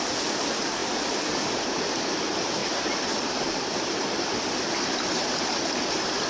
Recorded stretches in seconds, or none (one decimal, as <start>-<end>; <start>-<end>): 0.0-6.3